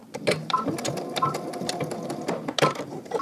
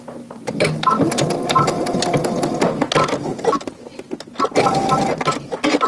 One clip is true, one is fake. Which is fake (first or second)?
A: first